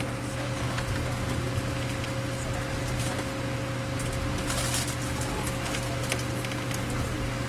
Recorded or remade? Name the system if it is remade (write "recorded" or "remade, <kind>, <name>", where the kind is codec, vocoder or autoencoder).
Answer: recorded